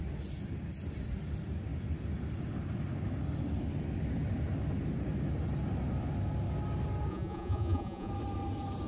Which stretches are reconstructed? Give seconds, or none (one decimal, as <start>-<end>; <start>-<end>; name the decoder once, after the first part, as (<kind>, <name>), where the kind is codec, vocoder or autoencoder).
7.1-8.1 (vocoder, Vocos)